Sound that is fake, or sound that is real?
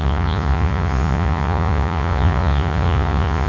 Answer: fake